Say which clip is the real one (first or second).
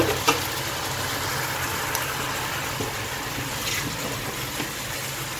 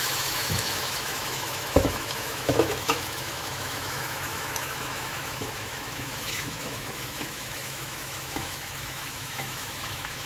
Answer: first